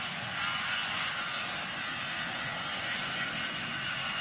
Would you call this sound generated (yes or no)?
yes